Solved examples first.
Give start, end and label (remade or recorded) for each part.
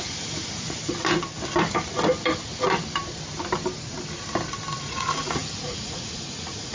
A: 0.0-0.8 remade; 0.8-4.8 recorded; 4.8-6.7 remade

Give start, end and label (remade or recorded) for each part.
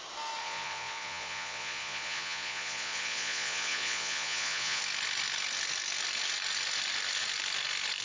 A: 0.0-0.4 recorded; 0.4-4.8 remade; 4.8-8.0 recorded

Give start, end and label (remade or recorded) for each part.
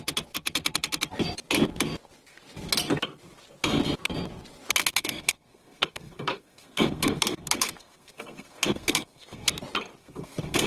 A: 0.0-4.8 recorded; 4.8-9.5 remade; 9.5-10.0 recorded; 10.0-10.7 remade